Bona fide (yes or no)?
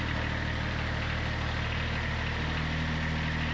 yes